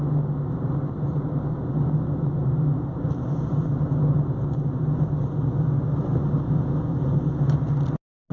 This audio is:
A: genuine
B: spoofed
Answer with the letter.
A